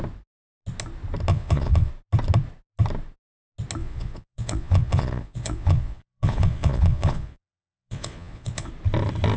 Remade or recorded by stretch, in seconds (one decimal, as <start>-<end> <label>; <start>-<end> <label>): 0.0-1.3 recorded; 1.3-1.9 remade; 1.9-3.8 recorded; 3.8-8.7 remade; 8.7-9.4 recorded